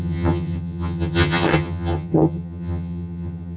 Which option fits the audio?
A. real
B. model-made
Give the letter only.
B